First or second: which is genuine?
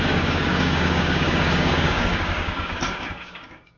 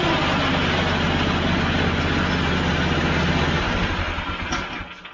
second